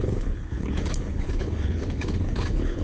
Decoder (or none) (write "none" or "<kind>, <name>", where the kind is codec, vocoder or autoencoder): codec, HILCodec